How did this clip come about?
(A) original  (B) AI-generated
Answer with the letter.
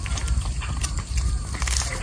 A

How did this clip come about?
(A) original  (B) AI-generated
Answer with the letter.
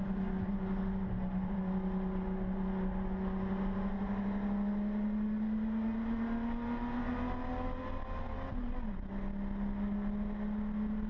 A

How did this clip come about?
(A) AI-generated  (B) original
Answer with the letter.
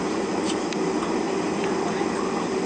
B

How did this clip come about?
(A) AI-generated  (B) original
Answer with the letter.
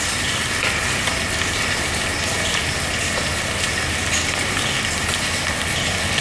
B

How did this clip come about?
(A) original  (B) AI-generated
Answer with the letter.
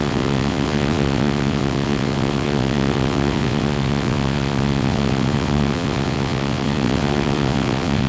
B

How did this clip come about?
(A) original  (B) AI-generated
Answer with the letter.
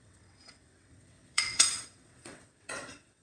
B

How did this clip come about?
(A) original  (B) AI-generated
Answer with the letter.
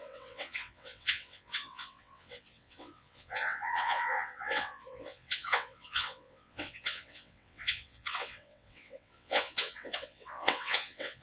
B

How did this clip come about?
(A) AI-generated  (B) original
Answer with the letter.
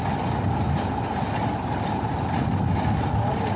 B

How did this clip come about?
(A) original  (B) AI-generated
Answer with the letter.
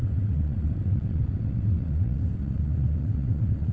B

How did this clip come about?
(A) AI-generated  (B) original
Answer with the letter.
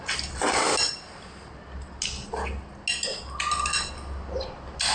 B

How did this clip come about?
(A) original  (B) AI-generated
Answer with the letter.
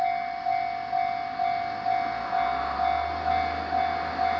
A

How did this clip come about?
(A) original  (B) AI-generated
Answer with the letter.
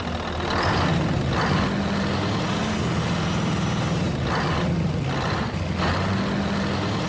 A